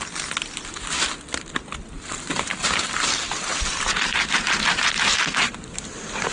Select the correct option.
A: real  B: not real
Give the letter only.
A